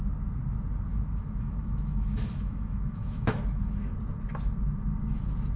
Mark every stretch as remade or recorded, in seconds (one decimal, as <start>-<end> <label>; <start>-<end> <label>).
0.0-0.9 recorded; 0.9-3.9 remade; 3.9-5.6 recorded